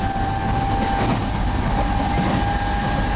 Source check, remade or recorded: recorded